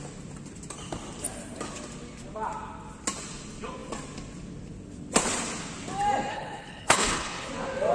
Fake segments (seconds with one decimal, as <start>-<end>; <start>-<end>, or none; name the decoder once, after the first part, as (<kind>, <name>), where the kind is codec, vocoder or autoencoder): 6.3-7.5 (codec, HILCodec)